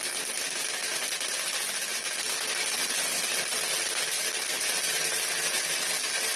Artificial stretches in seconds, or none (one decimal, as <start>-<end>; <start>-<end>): none